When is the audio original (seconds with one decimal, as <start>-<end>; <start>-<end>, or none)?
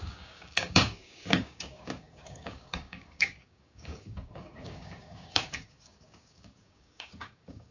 none